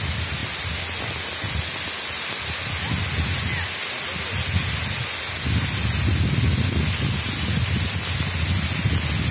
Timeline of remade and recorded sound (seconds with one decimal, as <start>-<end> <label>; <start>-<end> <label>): 0.0-9.3 recorded